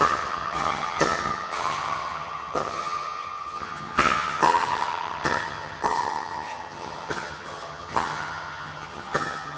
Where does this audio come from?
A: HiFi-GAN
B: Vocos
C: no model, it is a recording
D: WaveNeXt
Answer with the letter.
A